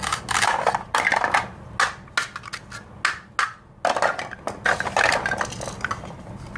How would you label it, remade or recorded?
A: recorded